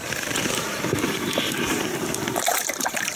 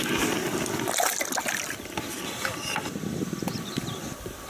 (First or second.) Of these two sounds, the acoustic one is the second